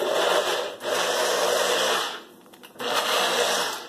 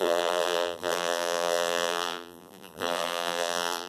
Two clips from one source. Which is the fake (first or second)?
second